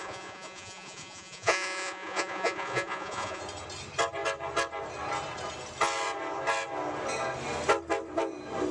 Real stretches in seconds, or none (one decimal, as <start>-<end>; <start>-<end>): 3.4-8.7